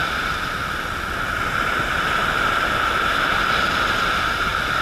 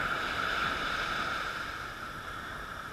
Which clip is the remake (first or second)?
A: second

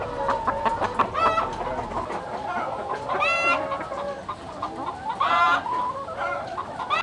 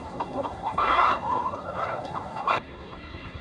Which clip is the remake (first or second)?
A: second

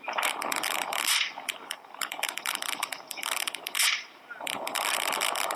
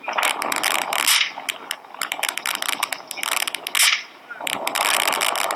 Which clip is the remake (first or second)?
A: first